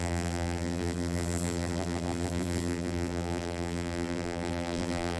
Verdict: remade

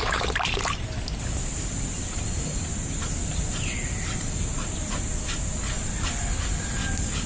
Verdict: recorded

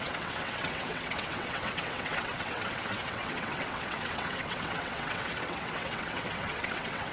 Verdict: remade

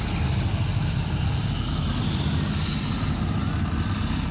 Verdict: recorded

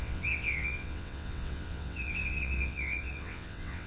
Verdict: remade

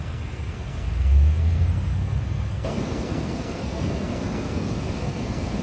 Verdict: remade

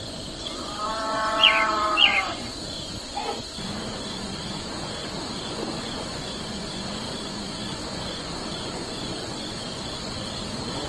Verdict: remade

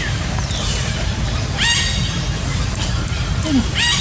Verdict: recorded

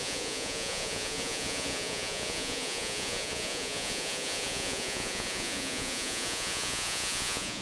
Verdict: remade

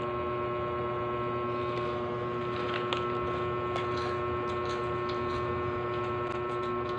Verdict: recorded